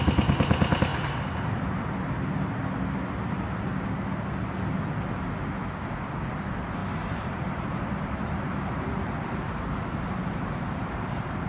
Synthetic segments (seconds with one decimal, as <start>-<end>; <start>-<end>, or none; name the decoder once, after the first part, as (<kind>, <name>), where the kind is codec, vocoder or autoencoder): 6.8-11.5 (vocoder, BigVGAN v2)